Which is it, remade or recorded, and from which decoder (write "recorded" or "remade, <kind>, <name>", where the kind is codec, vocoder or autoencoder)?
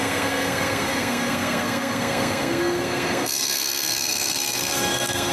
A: remade, codec, SNAC